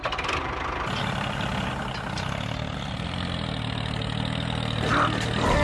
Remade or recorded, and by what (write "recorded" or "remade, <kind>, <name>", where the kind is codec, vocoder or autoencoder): recorded